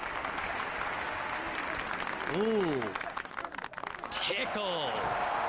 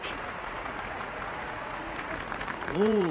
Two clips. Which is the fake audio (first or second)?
second